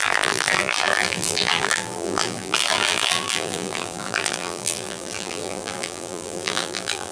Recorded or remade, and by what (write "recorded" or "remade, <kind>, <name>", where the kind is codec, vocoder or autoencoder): remade, vocoder, BigVGAN v2